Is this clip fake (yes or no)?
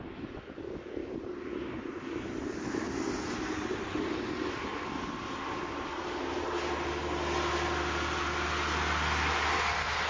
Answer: no